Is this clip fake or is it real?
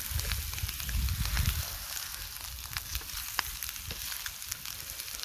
real